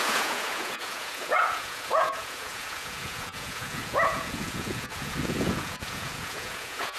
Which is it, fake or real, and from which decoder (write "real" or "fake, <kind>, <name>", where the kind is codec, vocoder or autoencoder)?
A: fake, vocoder, Vocos